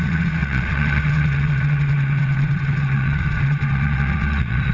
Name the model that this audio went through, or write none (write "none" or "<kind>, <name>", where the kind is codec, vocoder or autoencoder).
vocoder, WaveNeXt